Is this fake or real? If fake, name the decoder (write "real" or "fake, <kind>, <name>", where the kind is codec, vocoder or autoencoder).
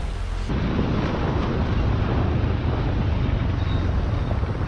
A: real